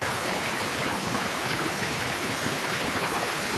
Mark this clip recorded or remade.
remade